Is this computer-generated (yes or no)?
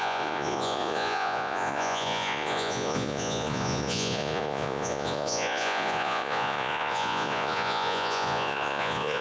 yes